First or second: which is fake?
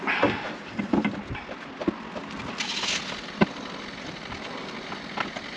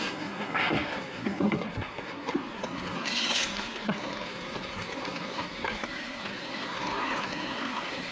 second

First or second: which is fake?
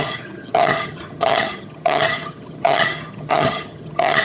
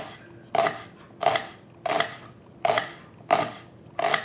first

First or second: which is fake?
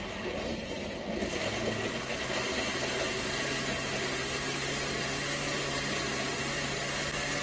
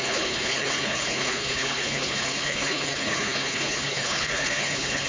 second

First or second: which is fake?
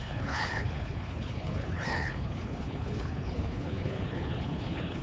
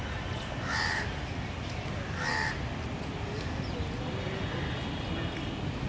first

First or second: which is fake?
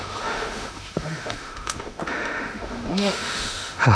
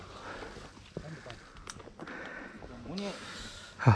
first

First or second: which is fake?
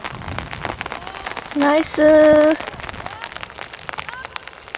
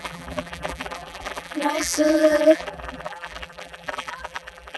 second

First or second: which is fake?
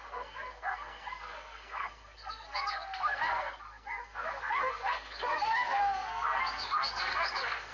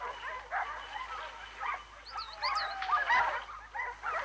first